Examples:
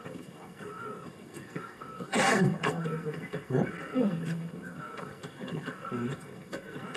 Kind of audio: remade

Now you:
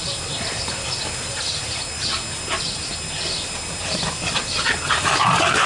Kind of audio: remade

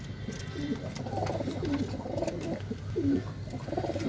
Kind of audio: recorded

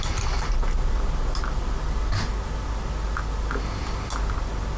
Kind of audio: recorded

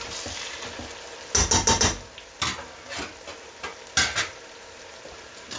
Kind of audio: recorded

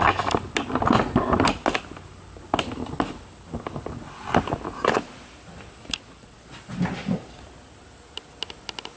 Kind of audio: recorded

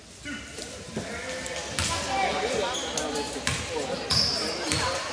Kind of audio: recorded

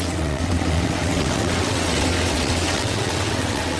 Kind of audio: remade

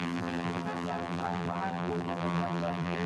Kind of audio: remade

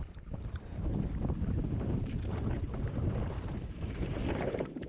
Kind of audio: remade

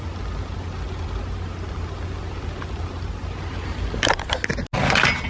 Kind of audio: recorded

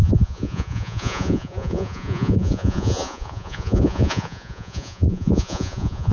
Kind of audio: remade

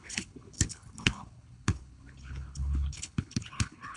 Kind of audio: remade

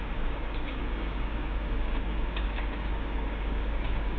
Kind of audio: remade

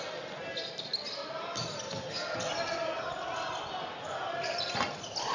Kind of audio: recorded